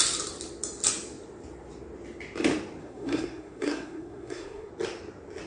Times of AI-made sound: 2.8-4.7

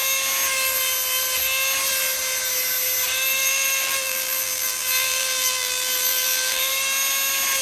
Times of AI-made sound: 3.4-6.7

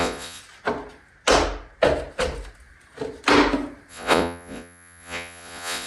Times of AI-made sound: 0.0-0.4; 3.9-5.9